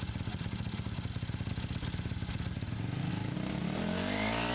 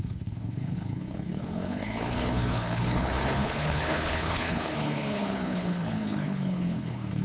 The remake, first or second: second